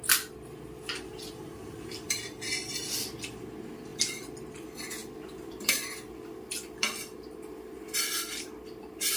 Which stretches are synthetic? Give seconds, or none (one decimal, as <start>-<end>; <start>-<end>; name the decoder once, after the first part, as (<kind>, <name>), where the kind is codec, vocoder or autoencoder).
0.0-3.9 (vocoder, BigVGAN v2); 4.5-9.2